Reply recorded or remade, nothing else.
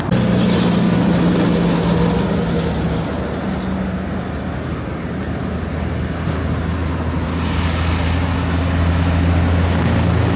recorded